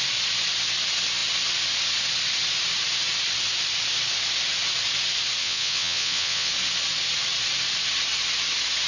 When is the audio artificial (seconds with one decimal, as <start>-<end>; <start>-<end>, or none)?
5.4-6.5